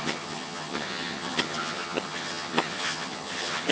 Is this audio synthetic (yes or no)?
yes